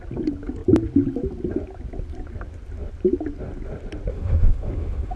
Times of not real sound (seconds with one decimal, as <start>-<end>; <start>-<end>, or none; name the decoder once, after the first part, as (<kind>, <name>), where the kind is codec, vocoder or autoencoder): 4.1-5.2 (autoencoder, DAC-VAE)